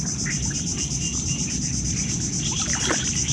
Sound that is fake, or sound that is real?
fake